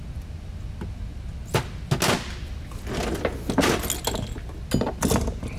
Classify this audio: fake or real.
real